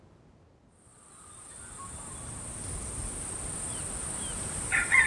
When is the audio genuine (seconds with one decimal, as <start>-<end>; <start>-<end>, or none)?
0.0-5.1